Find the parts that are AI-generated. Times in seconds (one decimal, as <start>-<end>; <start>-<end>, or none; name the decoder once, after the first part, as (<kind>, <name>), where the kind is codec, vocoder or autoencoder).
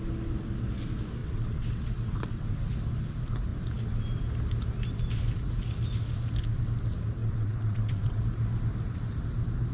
1.2-2.7 (vocoder, WaveNeXt); 7.2-8.2